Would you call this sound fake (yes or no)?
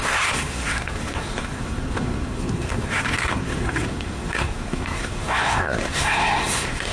yes